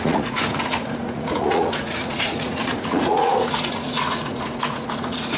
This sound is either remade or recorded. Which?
remade